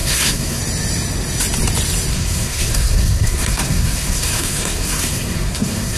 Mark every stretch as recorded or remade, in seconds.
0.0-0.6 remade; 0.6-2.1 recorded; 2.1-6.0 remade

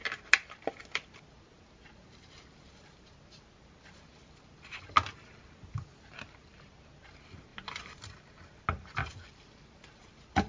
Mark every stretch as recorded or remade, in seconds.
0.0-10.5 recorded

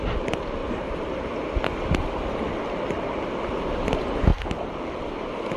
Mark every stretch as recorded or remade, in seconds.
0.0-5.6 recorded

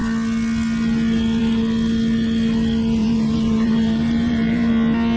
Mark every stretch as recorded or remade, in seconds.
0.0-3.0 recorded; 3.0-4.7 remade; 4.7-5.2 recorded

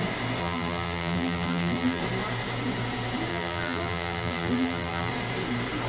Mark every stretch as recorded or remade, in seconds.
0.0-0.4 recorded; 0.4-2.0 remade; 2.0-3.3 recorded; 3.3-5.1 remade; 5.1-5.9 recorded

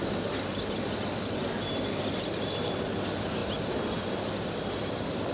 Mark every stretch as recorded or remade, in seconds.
0.0-5.3 recorded

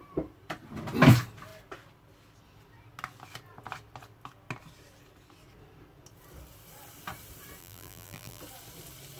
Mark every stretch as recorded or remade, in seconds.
0.0-7.6 recorded; 7.6-8.4 remade; 8.4-9.2 recorded

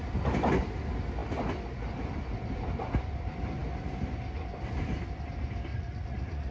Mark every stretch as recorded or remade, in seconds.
0.0-5.7 recorded; 5.7-6.5 remade